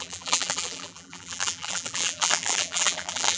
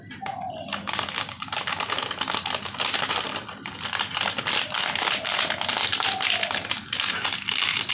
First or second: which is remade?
first